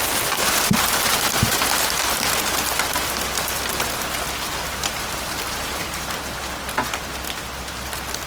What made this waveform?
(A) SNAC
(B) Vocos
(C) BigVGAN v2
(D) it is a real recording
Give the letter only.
D